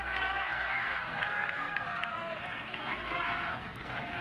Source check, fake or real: fake